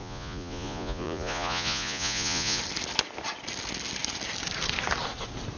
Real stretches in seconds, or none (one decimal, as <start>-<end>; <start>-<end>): 2.6-5.6